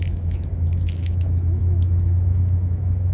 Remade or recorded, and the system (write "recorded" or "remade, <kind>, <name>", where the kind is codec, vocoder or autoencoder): remade, autoencoder, DAC-VAE